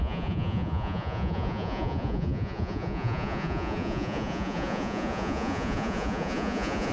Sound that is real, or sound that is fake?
fake